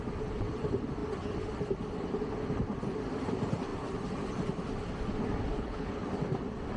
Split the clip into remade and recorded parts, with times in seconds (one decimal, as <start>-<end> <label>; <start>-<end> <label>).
0.0-5.5 recorded; 5.5-6.0 remade; 6.0-6.8 recorded